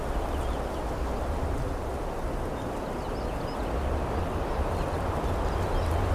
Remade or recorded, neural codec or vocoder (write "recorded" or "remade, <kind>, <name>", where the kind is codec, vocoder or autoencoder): recorded